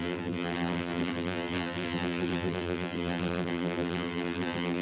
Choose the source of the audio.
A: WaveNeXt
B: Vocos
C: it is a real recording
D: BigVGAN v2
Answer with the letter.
D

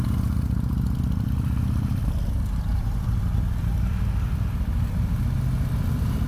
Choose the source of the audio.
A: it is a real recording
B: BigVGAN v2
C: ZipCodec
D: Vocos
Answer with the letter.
B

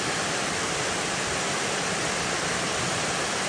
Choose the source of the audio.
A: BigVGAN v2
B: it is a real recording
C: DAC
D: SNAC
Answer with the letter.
B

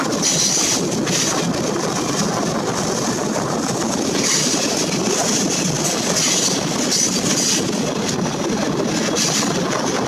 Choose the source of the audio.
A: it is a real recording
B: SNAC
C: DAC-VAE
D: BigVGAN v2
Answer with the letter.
A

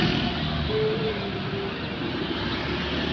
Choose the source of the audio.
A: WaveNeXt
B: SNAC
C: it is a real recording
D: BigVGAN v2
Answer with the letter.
C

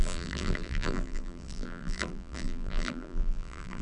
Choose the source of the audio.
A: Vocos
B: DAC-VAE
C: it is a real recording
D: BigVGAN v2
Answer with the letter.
D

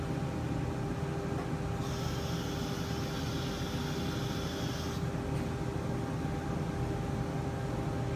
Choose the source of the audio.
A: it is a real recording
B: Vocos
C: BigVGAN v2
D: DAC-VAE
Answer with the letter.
A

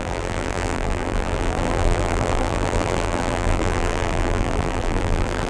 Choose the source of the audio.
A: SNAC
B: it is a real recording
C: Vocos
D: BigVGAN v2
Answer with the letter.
D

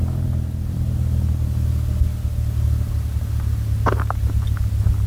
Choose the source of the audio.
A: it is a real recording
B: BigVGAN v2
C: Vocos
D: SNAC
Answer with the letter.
B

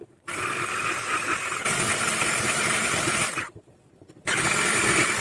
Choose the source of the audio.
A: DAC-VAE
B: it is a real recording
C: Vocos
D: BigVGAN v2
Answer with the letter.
B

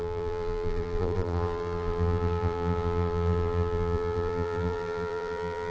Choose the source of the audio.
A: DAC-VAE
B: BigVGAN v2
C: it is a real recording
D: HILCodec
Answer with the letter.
B